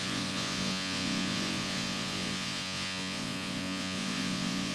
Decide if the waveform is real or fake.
fake